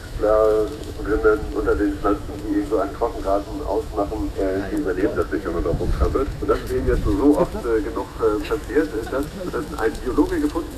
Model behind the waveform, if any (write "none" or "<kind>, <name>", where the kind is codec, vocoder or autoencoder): autoencoder, DAC-VAE